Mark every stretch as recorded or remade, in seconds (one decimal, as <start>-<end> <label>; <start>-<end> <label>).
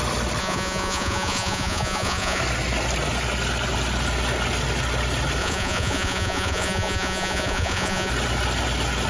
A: 0.0-0.4 recorded; 0.4-2.4 remade; 2.4-5.4 recorded; 5.4-8.1 remade; 8.1-9.1 recorded